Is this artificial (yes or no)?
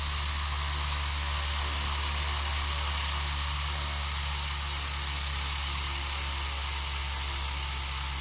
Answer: no